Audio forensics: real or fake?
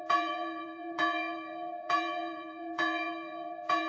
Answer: fake